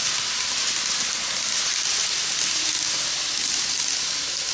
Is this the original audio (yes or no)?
yes